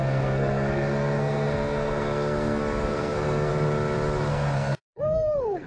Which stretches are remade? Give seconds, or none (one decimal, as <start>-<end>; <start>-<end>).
0.0-3.5; 4.3-5.7